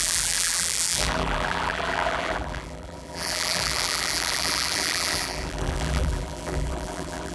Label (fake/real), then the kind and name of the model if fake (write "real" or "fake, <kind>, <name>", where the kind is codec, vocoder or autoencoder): fake, vocoder, BigVGAN v2